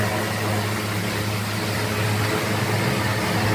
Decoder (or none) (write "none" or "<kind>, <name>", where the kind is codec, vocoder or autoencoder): none